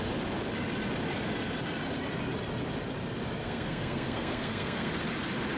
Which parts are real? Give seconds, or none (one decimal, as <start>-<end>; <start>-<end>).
0.0-3.4; 4.9-5.6